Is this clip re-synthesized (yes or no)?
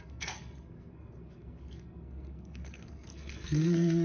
yes